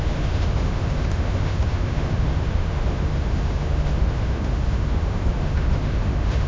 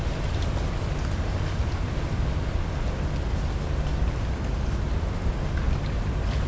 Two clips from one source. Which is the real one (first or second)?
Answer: second